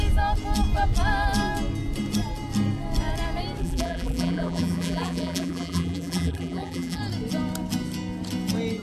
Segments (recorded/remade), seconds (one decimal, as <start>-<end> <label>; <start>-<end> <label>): 0.0-3.6 recorded; 3.6-7.0 remade; 7.0-8.8 recorded

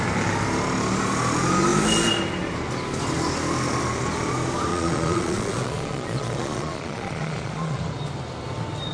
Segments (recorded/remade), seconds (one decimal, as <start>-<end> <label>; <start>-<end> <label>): 0.0-4.7 recorded; 4.7-7.8 remade; 7.8-8.9 recorded

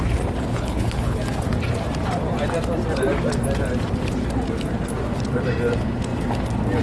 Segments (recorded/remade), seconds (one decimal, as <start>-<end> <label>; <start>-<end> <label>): 0.0-0.5 recorded; 0.5-1.2 remade; 1.2-6.8 recorded

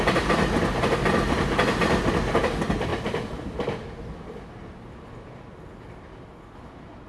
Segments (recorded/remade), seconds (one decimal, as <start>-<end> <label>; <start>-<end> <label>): 0.0-7.1 recorded

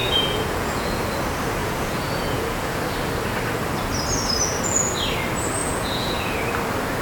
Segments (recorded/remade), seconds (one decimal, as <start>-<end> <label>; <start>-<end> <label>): 0.0-1.0 remade; 1.0-1.6 recorded; 1.6-2.8 remade; 2.8-5.6 recorded; 5.6-6.4 remade; 6.4-7.0 recorded

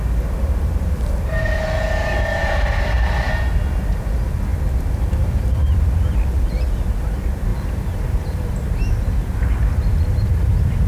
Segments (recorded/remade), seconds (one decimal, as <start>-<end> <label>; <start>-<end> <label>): 0.0-0.4 recorded; 0.4-1.0 remade; 1.0-2.0 recorded; 2.0-3.3 remade; 3.3-7.5 recorded; 7.5-8.5 remade; 8.5-10.9 recorded